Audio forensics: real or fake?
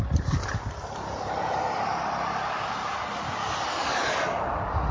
real